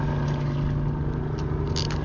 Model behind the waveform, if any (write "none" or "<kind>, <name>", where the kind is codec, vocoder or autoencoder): none